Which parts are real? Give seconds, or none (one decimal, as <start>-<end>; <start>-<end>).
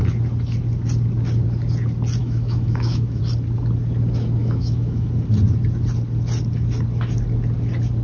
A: 0.0-2.2; 3.2-4.4; 5.1-8.0